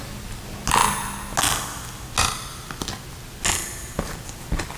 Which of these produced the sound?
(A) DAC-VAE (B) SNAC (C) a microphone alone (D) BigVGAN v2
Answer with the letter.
C